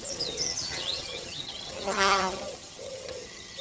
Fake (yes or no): yes